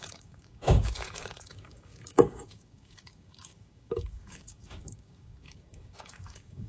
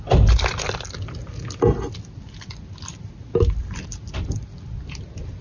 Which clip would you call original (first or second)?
second